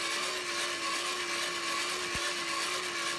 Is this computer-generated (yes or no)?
no